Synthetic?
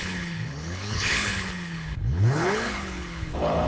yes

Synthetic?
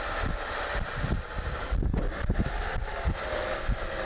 no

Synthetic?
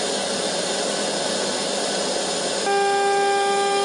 no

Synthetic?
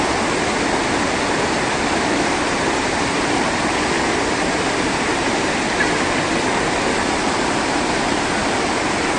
no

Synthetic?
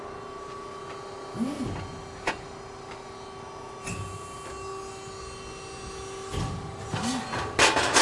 no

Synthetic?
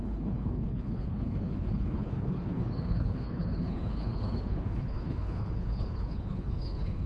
yes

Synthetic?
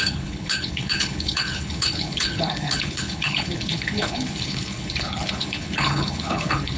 yes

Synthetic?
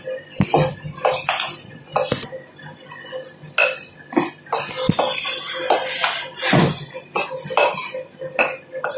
no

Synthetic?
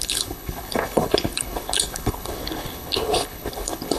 yes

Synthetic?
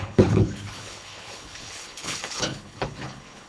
yes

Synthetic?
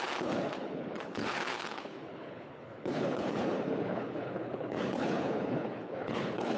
yes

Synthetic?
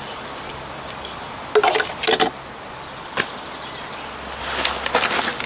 no